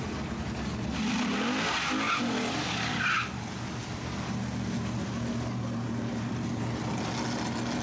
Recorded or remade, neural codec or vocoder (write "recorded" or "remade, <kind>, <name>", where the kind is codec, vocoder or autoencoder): recorded